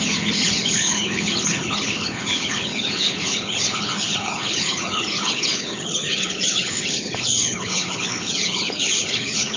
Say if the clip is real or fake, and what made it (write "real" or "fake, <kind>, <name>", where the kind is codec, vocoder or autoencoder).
fake, codec, HILCodec